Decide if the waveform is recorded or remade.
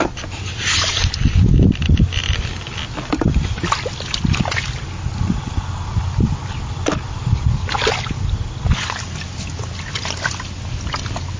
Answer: recorded